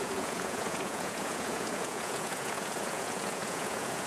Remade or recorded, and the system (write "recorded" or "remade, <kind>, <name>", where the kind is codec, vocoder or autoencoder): remade, vocoder, Vocos